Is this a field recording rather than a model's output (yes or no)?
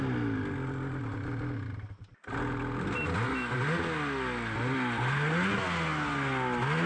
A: yes